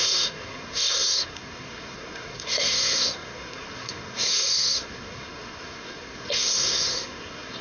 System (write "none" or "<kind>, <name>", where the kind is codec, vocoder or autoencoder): codec, SNAC